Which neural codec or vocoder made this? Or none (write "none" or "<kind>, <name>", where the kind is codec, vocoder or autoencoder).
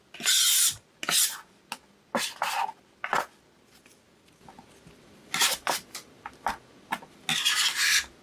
none